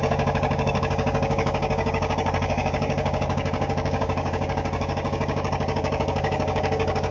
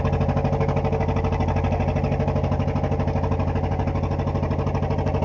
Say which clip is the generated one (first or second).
first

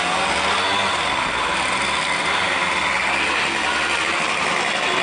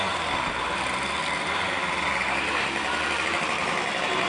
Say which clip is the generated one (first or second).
second